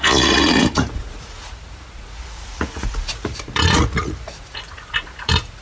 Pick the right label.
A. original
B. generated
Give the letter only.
B